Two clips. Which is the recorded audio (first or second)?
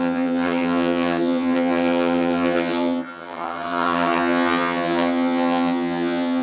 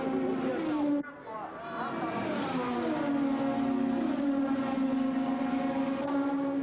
second